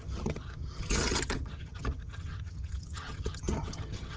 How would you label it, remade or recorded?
remade